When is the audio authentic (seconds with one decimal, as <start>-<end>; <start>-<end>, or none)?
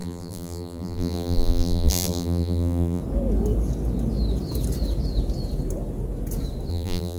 3.0-6.7